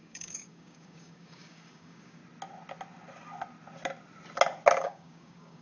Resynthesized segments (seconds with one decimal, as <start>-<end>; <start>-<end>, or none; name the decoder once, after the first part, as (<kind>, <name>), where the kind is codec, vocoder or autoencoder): 0.0-2.2 (codec, DAC); 4.8-5.6